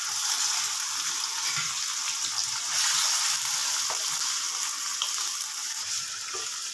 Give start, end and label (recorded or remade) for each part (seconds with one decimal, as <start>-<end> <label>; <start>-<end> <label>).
0.0-6.7 recorded